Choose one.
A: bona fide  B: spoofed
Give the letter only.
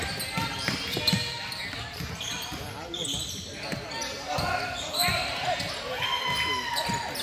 A